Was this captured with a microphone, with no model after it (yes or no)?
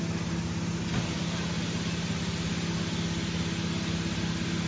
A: yes